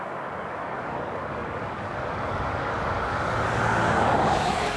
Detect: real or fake fake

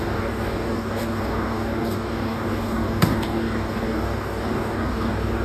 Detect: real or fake fake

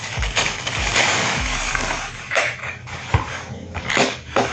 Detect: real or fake fake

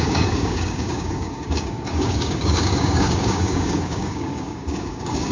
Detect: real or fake fake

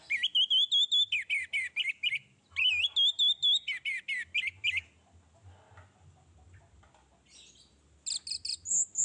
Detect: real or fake real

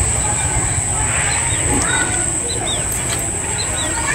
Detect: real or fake real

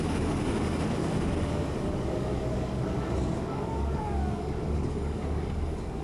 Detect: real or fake fake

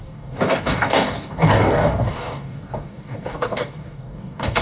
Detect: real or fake fake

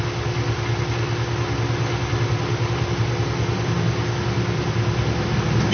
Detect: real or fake real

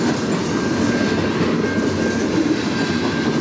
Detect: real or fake real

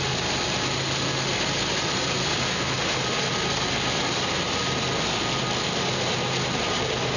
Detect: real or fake real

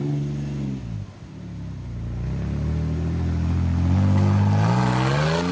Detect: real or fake real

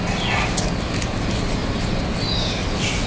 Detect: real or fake real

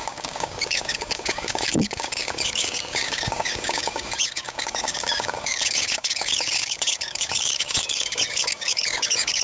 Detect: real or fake fake